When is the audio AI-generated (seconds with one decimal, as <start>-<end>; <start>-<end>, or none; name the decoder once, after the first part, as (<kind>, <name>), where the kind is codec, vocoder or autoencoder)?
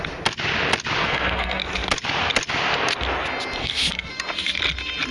1.0-1.6 (codec, SNAC); 3.6-4.1